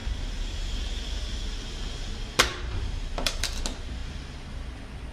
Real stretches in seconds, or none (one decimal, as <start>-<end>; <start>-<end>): 0.0-2.5; 3.6-5.1